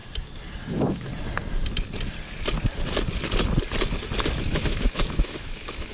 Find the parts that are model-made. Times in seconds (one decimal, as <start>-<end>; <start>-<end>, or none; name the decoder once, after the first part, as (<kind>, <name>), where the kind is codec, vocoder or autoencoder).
0.7-1.1 (autoencoder, DAC-VAE); 4.4-5.9